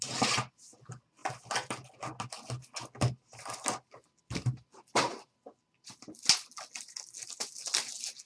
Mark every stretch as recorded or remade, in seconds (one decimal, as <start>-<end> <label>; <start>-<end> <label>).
0.0-8.3 recorded